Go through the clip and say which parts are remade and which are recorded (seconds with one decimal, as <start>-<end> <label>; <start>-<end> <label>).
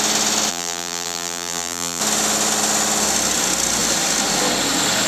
0.0-0.5 recorded; 0.5-2.0 remade; 2.0-5.1 recorded